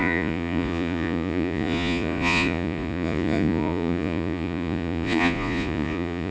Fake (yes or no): yes